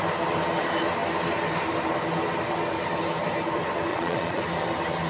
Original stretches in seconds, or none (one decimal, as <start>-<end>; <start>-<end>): 0.0-3.9; 4.4-5.1